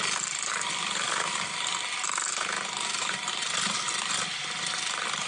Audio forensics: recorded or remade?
recorded